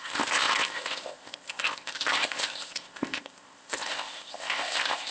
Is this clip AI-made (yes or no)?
yes